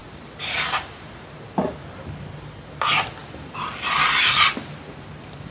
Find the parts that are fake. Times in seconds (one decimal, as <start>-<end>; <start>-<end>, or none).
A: 0.0-1.4